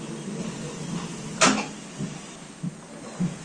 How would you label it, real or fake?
real